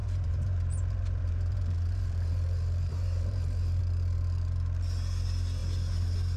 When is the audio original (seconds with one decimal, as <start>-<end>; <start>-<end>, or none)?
3.8-6.4